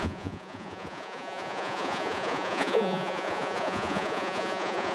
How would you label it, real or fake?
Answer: fake